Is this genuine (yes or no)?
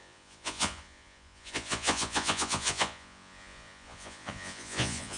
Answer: no